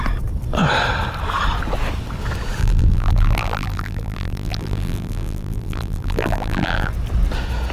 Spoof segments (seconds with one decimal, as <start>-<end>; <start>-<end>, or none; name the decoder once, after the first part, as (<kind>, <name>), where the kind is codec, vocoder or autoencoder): 2.6-6.9 (vocoder, BigVGAN v2)